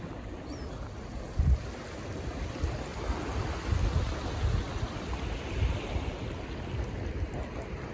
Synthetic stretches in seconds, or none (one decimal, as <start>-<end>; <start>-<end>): none